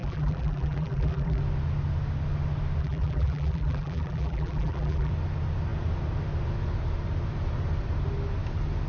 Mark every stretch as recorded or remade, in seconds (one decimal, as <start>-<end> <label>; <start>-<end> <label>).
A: 0.0-1.4 remade; 1.4-2.8 recorded; 2.8-5.1 remade; 5.1-8.9 recorded